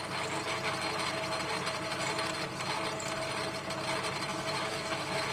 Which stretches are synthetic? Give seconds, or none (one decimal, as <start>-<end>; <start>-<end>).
4.3-5.3